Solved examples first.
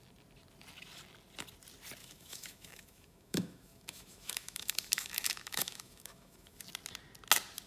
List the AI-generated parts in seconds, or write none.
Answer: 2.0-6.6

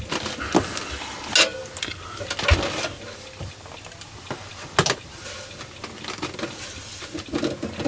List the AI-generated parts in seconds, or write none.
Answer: none

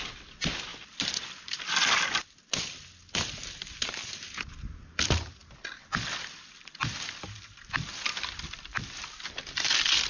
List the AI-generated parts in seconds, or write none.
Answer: none

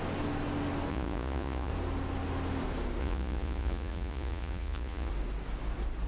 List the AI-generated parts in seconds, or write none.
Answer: 0.9-1.7; 3.0-5.1